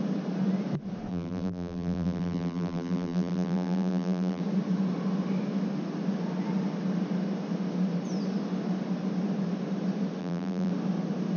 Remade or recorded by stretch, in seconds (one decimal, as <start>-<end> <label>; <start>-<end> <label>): 0.0-1.1 recorded; 1.1-4.4 remade; 4.4-10.2 recorded; 10.2-10.7 remade; 10.7-11.4 recorded

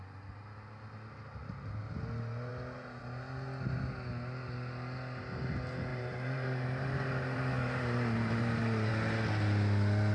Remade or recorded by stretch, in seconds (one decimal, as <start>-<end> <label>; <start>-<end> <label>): 0.0-5.9 recorded; 5.9-8.9 remade; 8.9-10.1 recorded